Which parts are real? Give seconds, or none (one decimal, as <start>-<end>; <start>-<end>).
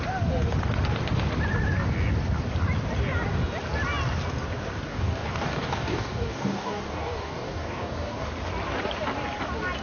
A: 0.0-4.9; 8.3-9.8